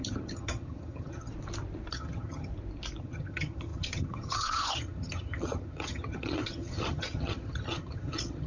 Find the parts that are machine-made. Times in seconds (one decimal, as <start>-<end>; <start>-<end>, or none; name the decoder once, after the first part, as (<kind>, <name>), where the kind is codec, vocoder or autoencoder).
0.0-1.3 (vocoder, HiFi-GAN); 1.9-2.5; 3.0-8.5